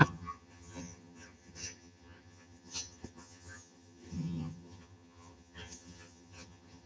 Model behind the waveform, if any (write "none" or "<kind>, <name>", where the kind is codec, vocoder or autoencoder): vocoder, HiFi-GAN